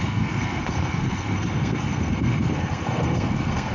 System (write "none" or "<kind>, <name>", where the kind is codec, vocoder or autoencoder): codec, SNAC